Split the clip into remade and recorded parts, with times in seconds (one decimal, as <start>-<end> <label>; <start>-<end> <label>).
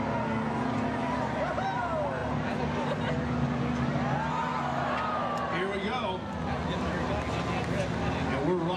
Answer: 0.0-8.8 recorded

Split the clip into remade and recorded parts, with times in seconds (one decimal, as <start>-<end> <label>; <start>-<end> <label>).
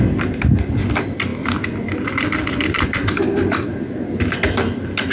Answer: 0.0-1.3 recorded; 1.3-3.2 remade; 3.2-5.1 recorded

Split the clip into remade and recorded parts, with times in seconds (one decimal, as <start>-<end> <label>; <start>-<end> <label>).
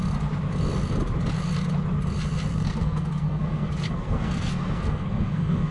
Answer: 0.0-2.5 recorded; 2.5-5.7 remade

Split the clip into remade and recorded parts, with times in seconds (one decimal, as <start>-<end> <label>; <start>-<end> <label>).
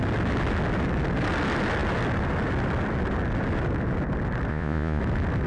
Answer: 0.0-4.5 recorded; 4.5-5.0 remade; 5.0-5.5 recorded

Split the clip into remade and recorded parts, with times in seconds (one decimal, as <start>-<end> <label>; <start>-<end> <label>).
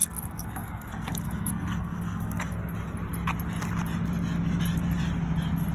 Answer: 0.0-2.5 remade; 2.5-5.7 recorded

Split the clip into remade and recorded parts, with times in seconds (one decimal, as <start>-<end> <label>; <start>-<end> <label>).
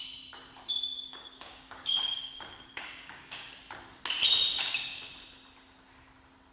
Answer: 0.0-1.1 recorded; 1.1-3.5 remade; 3.5-4.5 recorded; 4.5-5.1 remade; 5.1-6.5 recorded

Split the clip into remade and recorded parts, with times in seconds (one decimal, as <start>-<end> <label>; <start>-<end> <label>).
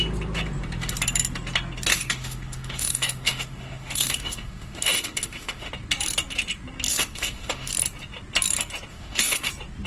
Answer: 0.0-1.9 recorded; 1.9-5.7 remade; 5.7-6.9 recorded; 6.9-7.7 remade; 7.7-8.9 recorded; 8.9-9.5 remade; 9.5-9.9 recorded